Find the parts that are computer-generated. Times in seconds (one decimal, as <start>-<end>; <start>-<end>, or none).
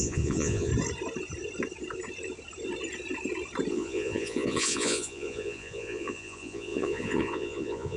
0.0-0.7; 3.7-8.0